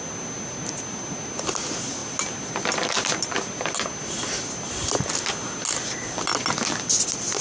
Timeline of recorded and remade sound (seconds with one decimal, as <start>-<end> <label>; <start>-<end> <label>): 0.0-7.4 recorded